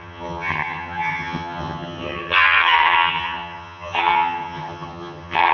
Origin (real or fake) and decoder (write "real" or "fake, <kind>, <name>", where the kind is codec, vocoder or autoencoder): fake, vocoder, HiFi-GAN